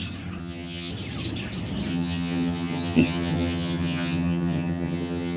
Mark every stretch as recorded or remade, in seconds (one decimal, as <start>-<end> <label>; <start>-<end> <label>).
0.0-0.4 recorded; 0.4-0.9 remade; 0.9-1.9 recorded; 1.9-5.4 remade